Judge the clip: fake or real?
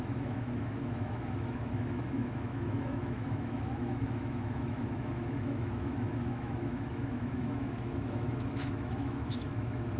fake